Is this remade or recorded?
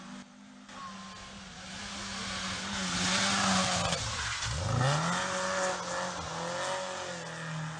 recorded